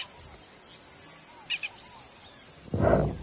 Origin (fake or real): real